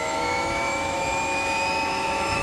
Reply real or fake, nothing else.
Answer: fake